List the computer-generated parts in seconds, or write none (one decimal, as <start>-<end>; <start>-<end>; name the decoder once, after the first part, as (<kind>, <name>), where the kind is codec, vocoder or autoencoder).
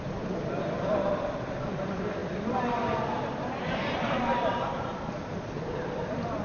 0.0-2.2 (vocoder, BigVGAN v2); 4.5-6.4